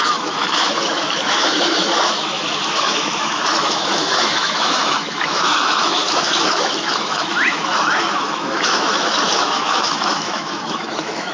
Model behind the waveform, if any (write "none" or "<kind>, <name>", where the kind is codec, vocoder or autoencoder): autoencoder, DAC-VAE